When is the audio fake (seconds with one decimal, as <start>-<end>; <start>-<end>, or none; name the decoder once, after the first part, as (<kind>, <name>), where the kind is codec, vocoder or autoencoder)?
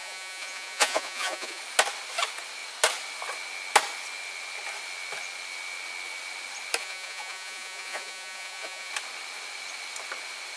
0.0-1.6 (vocoder, Vocos); 6.8-8.9